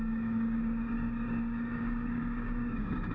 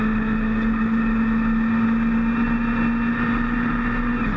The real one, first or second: second